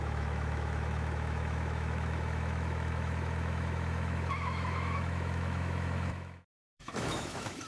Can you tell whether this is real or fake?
fake